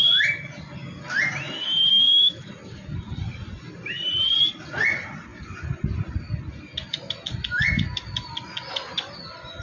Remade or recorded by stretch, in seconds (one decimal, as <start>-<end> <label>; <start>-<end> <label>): 0.0-1.9 recorded; 1.9-2.5 remade; 2.5-9.6 recorded